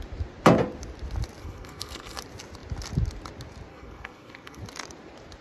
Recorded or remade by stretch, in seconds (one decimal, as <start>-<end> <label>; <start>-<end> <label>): 0.0-1.4 recorded; 1.4-2.2 remade; 2.2-3.7 recorded; 3.7-4.6 remade; 4.6-5.4 recorded